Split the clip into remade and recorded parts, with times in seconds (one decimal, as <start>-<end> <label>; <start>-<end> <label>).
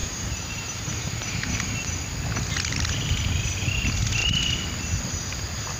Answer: 0.0-1.5 remade; 1.5-5.8 recorded